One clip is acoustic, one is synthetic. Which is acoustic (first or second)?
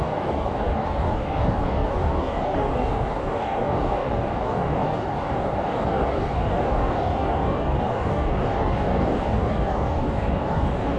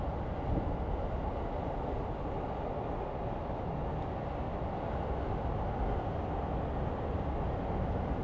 second